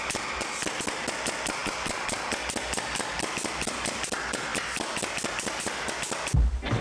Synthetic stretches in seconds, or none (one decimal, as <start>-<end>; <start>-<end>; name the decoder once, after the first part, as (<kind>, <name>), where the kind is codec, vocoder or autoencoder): none